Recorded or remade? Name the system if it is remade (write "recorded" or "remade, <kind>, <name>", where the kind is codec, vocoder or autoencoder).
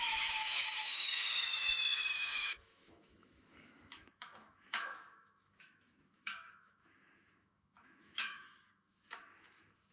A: remade, autoencoder, DAC-VAE